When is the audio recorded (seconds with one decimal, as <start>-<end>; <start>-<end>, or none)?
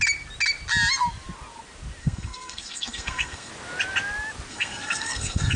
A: 0.0-2.0; 3.5-4.5